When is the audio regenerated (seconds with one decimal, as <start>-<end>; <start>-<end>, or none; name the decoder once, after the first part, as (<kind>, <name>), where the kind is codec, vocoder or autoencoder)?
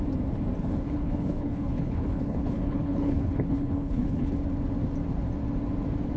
0.6-4.3 (codec, HILCodec)